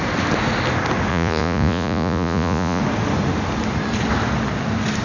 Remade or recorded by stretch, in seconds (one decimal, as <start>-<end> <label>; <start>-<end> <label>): 0.0-1.1 recorded; 1.1-2.8 remade; 2.8-5.0 recorded

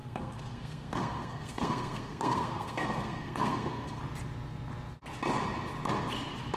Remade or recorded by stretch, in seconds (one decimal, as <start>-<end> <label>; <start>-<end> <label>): 0.0-4.0 remade; 4.0-6.6 recorded

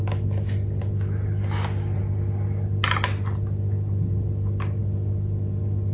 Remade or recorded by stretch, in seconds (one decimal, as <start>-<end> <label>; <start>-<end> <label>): 0.0-5.9 recorded

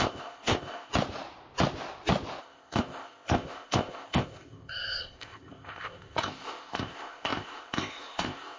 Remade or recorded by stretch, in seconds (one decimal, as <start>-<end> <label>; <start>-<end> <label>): 0.0-0.9 remade; 0.9-2.4 recorded; 2.4-8.6 remade

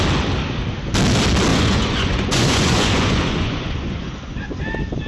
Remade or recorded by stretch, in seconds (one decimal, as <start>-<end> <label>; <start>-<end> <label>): 0.0-1.5 recorded; 1.5-4.6 remade; 4.6-5.1 recorded

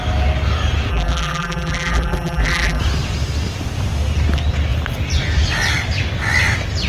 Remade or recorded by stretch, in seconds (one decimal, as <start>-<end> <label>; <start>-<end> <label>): 0.0-0.9 recorded; 0.9-2.8 remade; 2.8-6.9 recorded

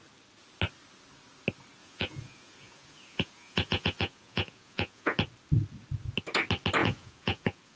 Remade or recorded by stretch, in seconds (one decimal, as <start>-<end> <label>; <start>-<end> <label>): 0.0-1.8 recorded; 1.8-5.2 remade; 5.2-6.8 recorded; 6.8-7.8 remade

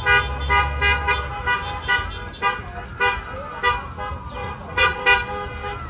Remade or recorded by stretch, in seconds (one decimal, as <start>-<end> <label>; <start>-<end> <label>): 0.0-4.4 recorded; 4.4-5.0 remade; 5.0-5.9 recorded